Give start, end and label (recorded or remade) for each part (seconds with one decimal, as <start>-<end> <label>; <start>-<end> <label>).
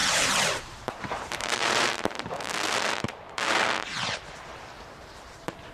0.0-1.9 remade; 1.9-4.5 recorded; 4.5-5.7 remade